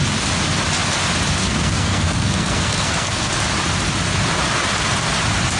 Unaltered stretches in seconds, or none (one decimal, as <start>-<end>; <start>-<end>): 0.0-1.4; 3.3-5.6